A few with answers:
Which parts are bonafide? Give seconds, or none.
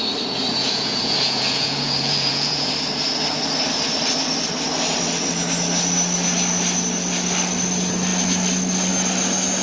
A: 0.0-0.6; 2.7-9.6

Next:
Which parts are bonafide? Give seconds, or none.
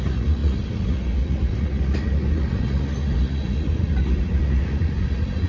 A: none